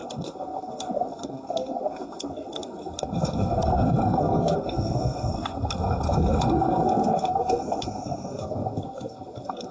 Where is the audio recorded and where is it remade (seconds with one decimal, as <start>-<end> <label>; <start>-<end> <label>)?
0.0-9.7 remade